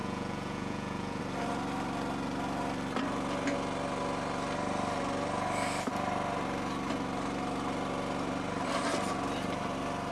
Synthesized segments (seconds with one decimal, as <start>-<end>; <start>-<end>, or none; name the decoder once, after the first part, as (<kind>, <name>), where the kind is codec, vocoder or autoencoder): 0.0-1.2 (vocoder, Vocos)